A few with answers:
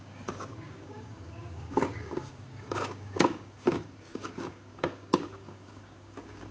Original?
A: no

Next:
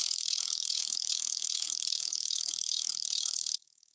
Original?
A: no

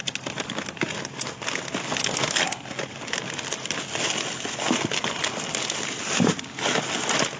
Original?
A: yes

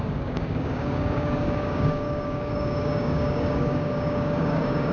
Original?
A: no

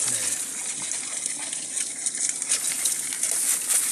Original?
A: yes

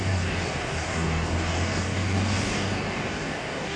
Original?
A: no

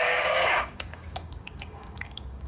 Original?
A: no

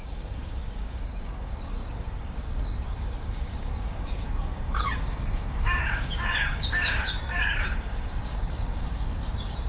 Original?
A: no